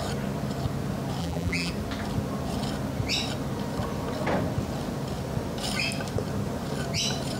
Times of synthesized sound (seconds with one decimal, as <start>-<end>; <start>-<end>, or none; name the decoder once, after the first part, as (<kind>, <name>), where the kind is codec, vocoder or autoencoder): 1.2-1.7 (vocoder, BigVGAN v2)